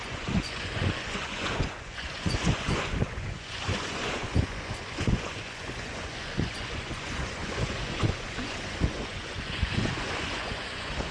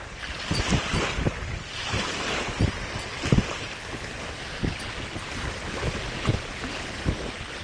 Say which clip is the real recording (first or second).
second